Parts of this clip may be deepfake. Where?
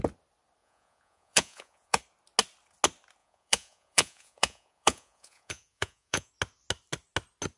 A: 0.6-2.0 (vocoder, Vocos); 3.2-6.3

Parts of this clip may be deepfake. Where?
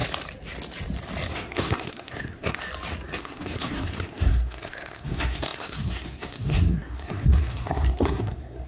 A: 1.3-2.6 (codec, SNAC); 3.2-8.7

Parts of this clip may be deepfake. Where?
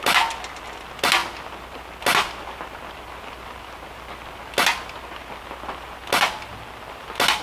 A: none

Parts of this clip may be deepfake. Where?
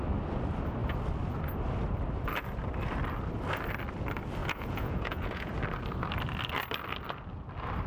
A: 4.4-5.5 (vocoder, Vocos)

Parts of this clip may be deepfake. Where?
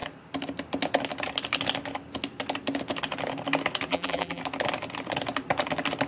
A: 3.9-4.4 (vocoder, BigVGAN v2)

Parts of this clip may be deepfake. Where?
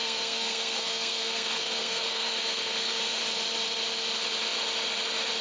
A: 0.0-3.2 (codec, SNAC)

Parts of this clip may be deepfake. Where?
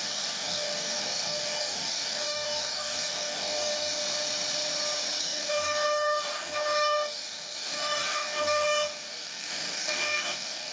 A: 0.0-4.0 (codec, DAC); 5.2-10.7